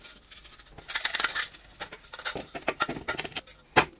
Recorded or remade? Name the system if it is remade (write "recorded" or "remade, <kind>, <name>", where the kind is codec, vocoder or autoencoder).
recorded